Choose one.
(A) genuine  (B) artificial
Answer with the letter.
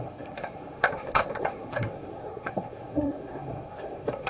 B